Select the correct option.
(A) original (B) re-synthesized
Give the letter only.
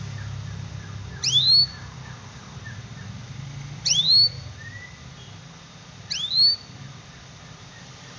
A